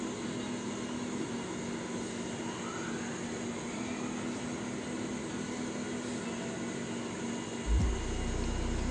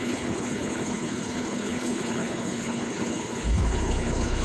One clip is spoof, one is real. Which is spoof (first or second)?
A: second